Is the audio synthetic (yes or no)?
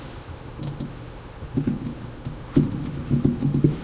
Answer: yes